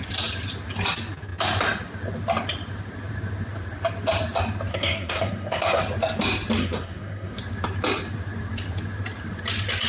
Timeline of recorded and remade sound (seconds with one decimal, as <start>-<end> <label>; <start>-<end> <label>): 0.0-4.7 recorded; 4.7-5.8 remade; 5.8-6.6 recorded; 6.6-7.4 remade; 7.4-9.9 recorded